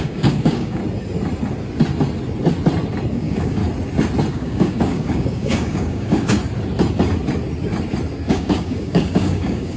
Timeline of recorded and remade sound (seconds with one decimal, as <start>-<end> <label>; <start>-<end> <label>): 0.0-0.8 remade; 0.8-3.1 recorded; 3.1-3.6 remade; 3.6-4.3 recorded; 4.3-6.4 remade; 6.4-8.3 recorded; 8.3-9.8 remade